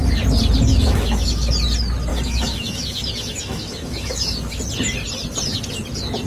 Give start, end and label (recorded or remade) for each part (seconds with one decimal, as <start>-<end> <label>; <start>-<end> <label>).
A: 0.0-0.7 recorded; 0.7-1.5 remade; 1.5-2.1 recorded; 2.1-4.6 remade; 4.6-6.3 recorded